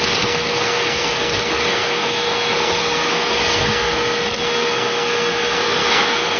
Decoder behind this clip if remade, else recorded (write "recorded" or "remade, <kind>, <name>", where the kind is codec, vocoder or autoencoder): remade, codec, SNAC